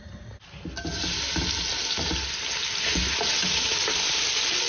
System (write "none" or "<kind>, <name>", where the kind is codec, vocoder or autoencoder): none